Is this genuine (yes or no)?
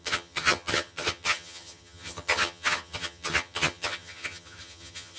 no